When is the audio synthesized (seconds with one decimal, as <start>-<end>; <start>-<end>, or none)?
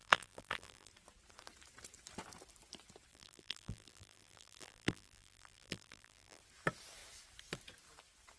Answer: 0.0-0.9; 3.1-6.4